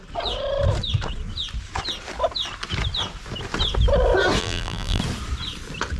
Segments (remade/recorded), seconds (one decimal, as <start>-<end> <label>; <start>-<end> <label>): 0.0-4.4 recorded; 4.4-5.0 remade; 5.0-6.0 recorded

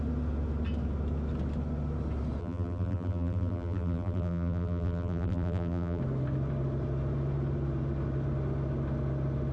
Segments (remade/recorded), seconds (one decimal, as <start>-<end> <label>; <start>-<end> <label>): 0.0-2.4 recorded; 2.4-6.0 remade; 6.0-9.5 recorded

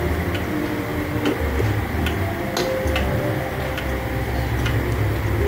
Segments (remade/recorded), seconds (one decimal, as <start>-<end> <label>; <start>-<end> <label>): 0.0-5.5 recorded

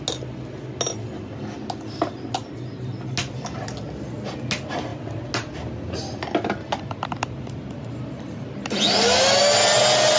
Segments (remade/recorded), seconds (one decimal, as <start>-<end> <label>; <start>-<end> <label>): 0.0-10.2 recorded

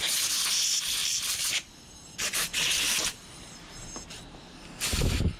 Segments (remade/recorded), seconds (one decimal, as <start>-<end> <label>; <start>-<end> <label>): 0.0-1.0 recorded; 1.0-4.2 remade; 4.2-5.4 recorded

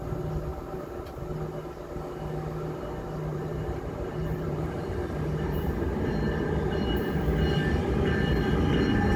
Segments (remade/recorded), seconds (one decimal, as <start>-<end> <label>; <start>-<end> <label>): 0.0-0.5 recorded; 0.5-1.2 remade; 1.2-3.3 recorded; 3.3-6.5 remade; 6.5-9.2 recorded

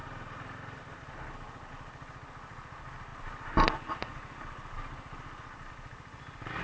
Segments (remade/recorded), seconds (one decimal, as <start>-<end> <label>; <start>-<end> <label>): 0.0-1.7 recorded; 1.7-3.1 remade; 3.1-5.7 recorded; 5.7-6.6 remade